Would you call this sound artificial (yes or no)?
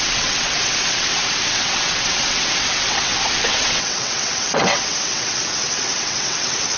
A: yes